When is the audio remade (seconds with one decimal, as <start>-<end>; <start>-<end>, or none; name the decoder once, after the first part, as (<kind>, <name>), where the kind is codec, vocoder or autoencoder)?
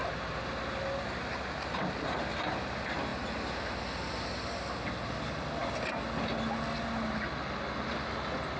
none